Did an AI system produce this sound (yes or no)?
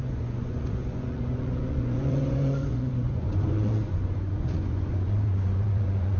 yes